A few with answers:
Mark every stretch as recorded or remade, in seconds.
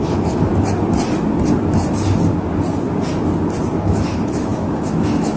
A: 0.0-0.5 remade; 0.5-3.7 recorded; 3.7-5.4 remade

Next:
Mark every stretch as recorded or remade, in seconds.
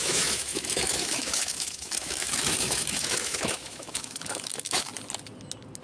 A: 0.0-4.9 remade; 4.9-5.8 recorded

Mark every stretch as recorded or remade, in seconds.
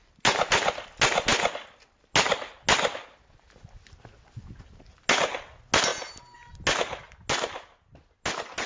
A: 0.0-8.7 recorded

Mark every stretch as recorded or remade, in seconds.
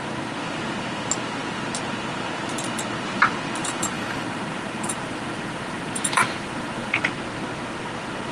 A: 0.0-3.6 recorded; 3.6-7.0 remade; 7.0-8.3 recorded